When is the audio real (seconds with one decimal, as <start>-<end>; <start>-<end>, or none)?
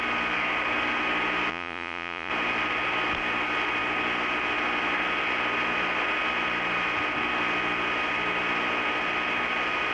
0.0-1.5; 2.3-9.9